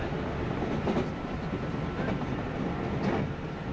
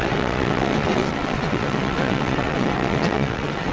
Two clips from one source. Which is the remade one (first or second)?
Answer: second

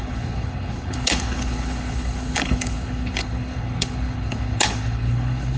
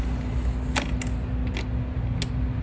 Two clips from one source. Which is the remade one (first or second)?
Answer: first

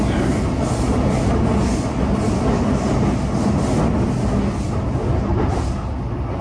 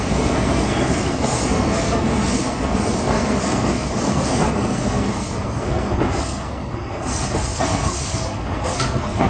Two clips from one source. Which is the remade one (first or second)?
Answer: second